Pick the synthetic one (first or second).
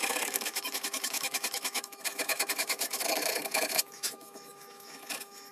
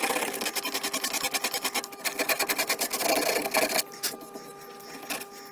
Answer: first